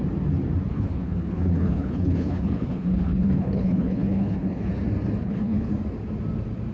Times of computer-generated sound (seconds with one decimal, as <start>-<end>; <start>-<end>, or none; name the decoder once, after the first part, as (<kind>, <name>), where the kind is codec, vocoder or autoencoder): 0.7-4.7 (codec, HILCodec); 5.2-5.7